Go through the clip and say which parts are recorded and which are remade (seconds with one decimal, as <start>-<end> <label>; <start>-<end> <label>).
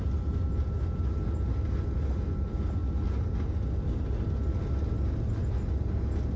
0.0-6.4 recorded